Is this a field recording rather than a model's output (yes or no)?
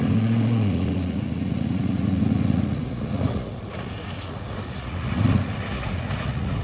no